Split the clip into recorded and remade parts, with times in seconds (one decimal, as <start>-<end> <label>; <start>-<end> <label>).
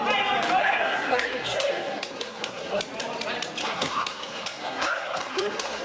0.0-0.6 recorded; 0.6-2.8 remade; 2.8-3.6 recorded; 3.6-5.8 remade